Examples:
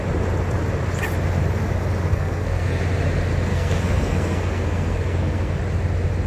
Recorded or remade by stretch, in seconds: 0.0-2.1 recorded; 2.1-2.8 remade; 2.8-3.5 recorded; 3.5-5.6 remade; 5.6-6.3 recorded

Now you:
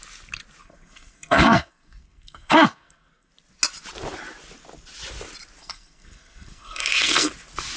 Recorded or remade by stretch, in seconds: 0.0-0.6 recorded; 0.6-3.3 remade; 3.3-5.6 recorded; 5.6-7.3 remade; 7.3-7.8 recorded